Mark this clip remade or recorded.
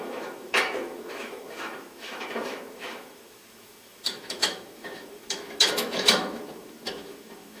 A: remade